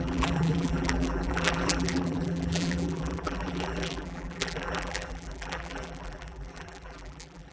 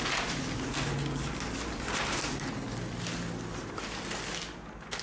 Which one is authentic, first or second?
second